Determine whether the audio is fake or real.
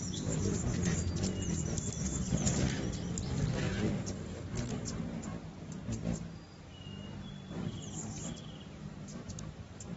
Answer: real